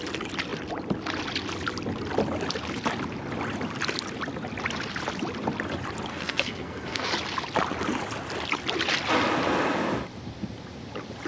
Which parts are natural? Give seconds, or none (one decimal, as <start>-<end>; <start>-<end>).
0.0-6.1; 7.1-11.3